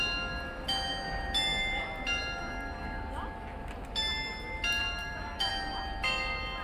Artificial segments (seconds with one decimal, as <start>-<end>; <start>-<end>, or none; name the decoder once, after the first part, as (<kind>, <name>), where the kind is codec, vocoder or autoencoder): 4.8-5.5 (vocoder, BigVGAN v2)